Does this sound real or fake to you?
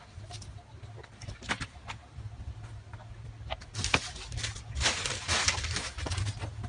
real